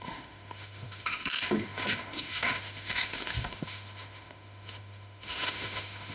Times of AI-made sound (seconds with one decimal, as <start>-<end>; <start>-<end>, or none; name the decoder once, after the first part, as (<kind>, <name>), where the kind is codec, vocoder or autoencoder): 0.0-6.1 (autoencoder, DAC-VAE)